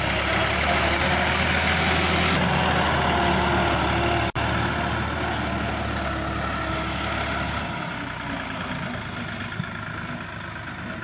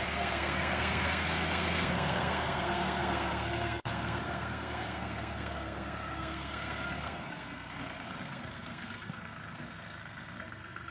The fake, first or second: second